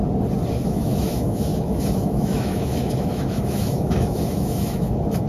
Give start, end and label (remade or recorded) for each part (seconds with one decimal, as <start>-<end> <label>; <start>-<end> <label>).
0.0-0.5 recorded; 0.5-5.3 remade